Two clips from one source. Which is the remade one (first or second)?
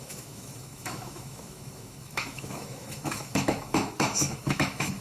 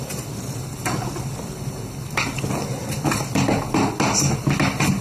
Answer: first